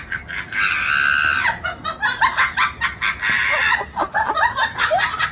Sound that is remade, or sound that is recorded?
recorded